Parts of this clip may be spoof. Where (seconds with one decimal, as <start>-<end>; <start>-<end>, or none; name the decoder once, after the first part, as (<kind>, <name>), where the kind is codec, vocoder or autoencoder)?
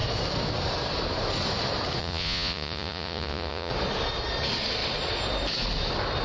2.0-3.7 (vocoder, Vocos)